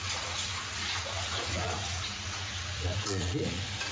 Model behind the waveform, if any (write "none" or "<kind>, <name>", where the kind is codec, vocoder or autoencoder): vocoder, Vocos